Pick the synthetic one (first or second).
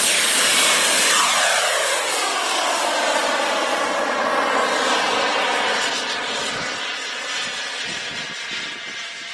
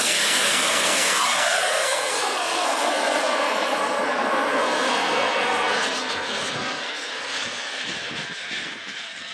second